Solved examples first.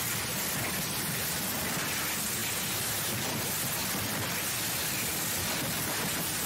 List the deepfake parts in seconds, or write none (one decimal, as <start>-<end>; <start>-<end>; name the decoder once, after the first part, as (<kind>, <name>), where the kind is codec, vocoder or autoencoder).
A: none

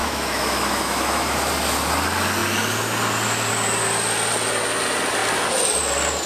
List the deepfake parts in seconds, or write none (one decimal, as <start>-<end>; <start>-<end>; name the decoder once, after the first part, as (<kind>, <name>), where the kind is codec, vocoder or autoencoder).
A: 0.0-1.5 (autoencoder, DAC-VAE)

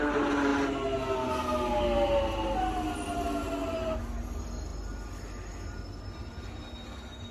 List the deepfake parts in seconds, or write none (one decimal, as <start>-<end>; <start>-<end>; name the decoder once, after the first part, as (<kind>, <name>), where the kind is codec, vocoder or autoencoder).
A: none

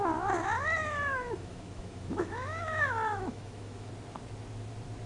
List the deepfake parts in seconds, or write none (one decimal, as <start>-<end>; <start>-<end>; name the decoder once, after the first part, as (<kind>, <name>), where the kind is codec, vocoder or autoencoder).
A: 0.8-3.9 (autoencoder, DAC-VAE)

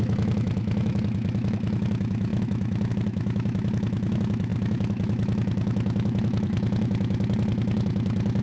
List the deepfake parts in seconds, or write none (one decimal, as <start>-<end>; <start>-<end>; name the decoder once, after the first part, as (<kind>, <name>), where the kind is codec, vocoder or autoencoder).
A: 0.0-8.4 (autoencoder, DAC-VAE)

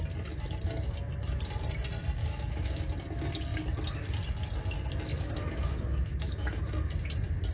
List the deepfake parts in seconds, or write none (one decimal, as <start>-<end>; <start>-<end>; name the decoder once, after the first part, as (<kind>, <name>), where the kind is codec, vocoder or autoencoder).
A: 2.2-2.8 (autoencoder, DAC-VAE); 5.1-6.6